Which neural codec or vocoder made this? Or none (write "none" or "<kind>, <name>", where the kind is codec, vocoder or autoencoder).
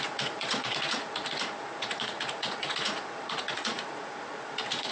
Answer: vocoder, Vocos